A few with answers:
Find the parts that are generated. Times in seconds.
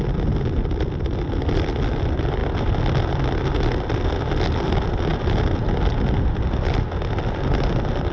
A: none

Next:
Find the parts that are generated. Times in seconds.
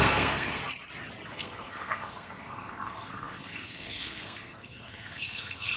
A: 0.0-0.6 (codec, SNAC); 1.3-5.8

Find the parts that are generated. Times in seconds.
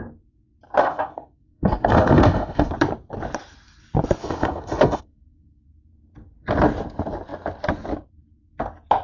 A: 0.8-2.7 (codec, SNAC); 4.2-5.6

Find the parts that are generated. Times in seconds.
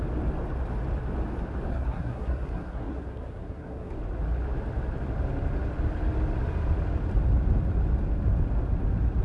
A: 1.7-3.9 (codec, SNAC)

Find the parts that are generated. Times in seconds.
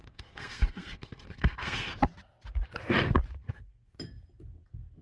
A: 0.0-1.9 (codec, SNAC); 3.4-3.9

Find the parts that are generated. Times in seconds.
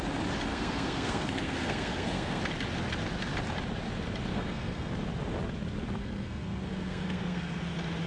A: 0.5-2.4 (codec, SNAC); 4.3-4.9; 6.0-7.6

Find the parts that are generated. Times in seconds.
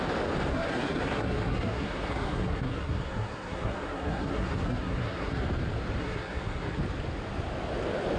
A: 0.5-5.4 (codec, SNAC); 6.0-6.8